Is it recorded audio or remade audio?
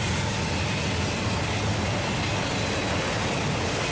recorded